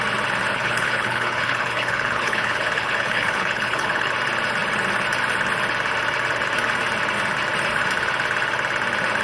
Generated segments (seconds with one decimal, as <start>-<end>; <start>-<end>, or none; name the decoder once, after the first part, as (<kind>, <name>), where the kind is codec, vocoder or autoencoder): 0.5-4.1 (codec, HILCodec)